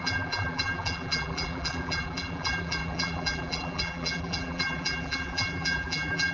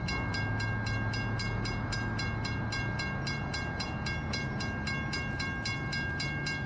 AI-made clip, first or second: first